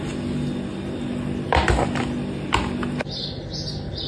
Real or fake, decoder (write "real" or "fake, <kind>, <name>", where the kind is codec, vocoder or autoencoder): real